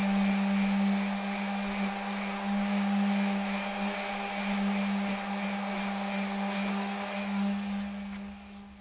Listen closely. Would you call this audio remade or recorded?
recorded